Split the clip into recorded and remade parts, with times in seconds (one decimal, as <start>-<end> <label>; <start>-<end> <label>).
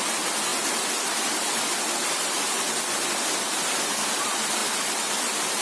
0.0-5.6 recorded